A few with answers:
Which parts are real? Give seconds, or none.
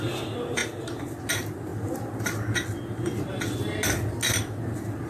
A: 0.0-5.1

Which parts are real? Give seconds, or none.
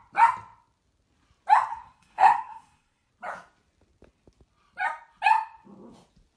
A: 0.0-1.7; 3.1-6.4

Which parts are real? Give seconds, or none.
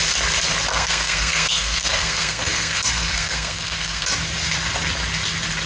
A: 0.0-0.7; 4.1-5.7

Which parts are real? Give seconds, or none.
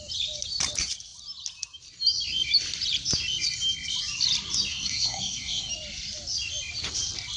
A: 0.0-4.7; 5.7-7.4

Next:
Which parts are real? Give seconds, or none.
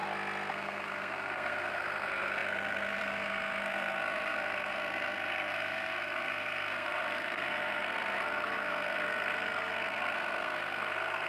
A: 0.0-0.5